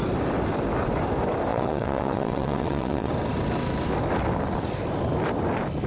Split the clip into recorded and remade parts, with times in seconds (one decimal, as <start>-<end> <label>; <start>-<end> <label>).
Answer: 0.0-1.5 recorded; 1.5-3.1 remade; 3.1-5.9 recorded